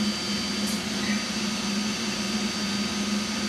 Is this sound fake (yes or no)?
no